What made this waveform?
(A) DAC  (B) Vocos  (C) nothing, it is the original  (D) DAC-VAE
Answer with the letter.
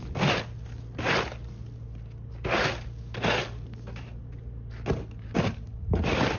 C